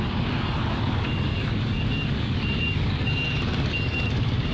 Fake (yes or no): yes